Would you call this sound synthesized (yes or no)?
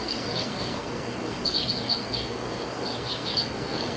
yes